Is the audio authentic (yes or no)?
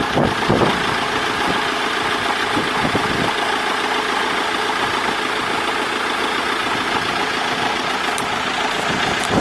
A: yes